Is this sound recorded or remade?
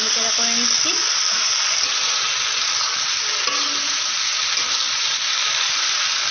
recorded